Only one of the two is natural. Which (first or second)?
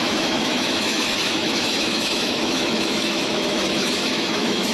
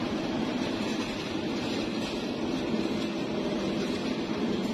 second